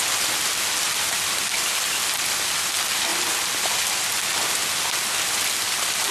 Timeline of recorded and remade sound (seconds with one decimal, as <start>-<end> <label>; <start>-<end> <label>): 0.0-6.1 recorded